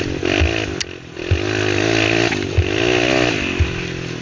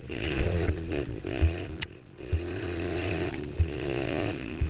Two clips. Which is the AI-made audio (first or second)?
second